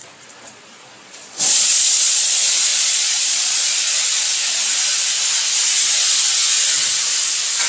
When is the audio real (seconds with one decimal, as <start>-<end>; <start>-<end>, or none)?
2.3-2.7; 3.9-7.7

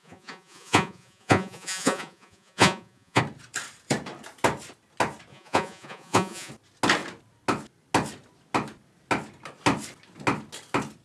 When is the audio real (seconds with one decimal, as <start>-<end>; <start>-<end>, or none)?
3.2-5.3; 6.5-11.0

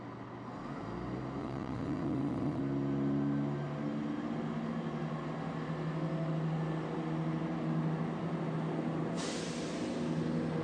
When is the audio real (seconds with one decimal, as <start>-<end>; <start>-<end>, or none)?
0.0-1.4; 2.6-10.6

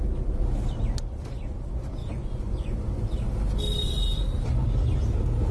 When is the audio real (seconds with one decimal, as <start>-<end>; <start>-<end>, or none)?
0.0-2.0; 3.0-5.5

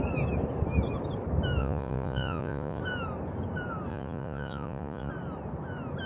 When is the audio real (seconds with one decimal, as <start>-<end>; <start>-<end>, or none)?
0.0-1.6; 2.8-3.9; 5.1-6.1